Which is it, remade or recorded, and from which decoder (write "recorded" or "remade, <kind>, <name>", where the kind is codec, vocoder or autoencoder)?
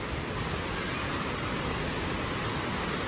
recorded